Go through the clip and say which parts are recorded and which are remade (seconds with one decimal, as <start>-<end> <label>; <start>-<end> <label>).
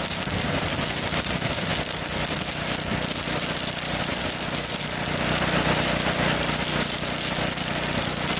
0.0-8.4 recorded